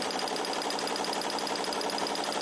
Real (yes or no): yes